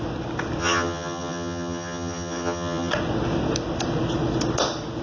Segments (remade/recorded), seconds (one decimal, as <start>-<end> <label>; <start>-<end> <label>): 0.0-0.6 recorded; 0.6-2.9 remade; 2.9-5.0 recorded